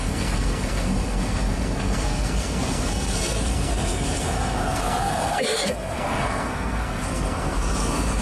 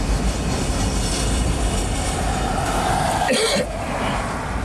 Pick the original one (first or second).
second